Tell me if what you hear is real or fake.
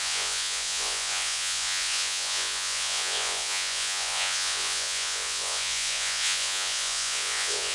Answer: fake